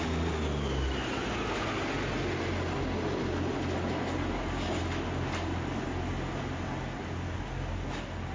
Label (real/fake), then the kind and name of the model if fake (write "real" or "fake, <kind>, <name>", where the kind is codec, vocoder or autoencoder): real